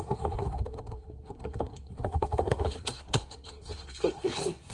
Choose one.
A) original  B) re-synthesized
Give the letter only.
B